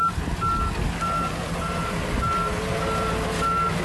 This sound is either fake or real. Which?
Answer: real